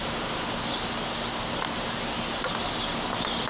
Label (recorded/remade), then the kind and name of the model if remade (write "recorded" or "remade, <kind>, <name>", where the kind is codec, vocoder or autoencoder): recorded